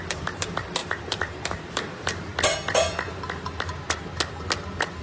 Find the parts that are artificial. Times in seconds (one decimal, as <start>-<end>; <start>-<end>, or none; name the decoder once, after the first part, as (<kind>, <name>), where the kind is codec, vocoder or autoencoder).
0.0-2.3 (vocoder, BigVGAN v2)